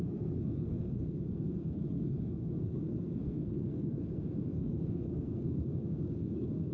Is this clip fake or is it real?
fake